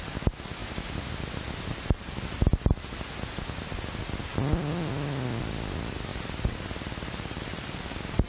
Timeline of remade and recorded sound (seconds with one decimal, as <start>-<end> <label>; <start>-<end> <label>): 0.0-6.1 recorded; 6.1-8.3 remade